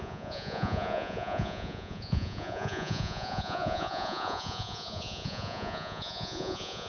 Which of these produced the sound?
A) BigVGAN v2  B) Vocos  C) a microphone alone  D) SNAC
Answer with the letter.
B